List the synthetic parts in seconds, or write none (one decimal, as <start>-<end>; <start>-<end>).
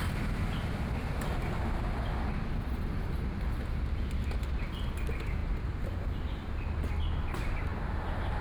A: none